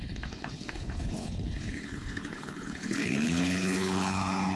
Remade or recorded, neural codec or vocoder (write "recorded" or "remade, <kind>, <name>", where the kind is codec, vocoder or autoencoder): remade, codec, HILCodec